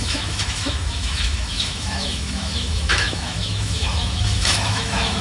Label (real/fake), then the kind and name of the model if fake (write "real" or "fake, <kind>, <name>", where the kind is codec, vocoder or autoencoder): fake, autoencoder, DAC-VAE